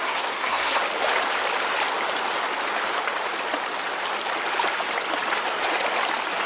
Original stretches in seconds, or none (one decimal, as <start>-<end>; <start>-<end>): 0.8-6.5